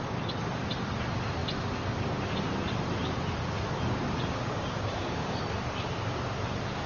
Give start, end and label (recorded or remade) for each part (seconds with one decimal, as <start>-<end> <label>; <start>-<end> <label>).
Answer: 0.0-4.3 recorded; 4.3-5.4 remade; 5.4-6.9 recorded